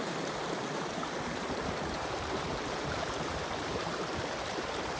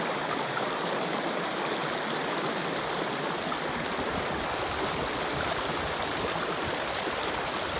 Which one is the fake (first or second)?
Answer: first